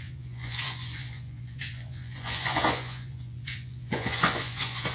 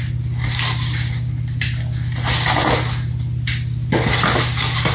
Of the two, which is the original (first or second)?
second